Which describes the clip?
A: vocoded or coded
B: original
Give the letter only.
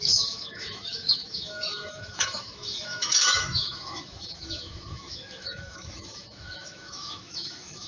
A